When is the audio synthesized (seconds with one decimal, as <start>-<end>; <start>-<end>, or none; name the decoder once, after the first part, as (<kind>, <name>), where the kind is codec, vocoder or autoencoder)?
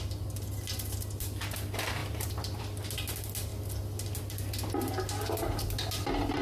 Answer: 2.0-2.6 (vocoder, BigVGAN v2)